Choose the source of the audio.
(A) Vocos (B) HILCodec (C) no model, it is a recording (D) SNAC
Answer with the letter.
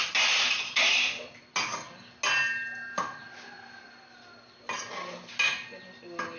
C